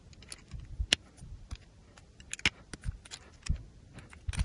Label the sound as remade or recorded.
recorded